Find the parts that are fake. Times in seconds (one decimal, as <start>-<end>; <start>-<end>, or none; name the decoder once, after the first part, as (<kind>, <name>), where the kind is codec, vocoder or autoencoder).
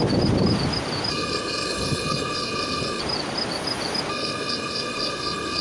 1.1-3.0 (codec, SNAC); 4.1-5.6